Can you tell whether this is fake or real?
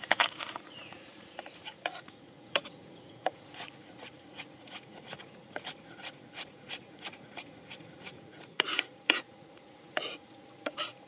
fake